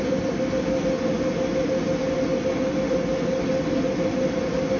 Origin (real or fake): real